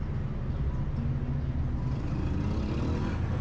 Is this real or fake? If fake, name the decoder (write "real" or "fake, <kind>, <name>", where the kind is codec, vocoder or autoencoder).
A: real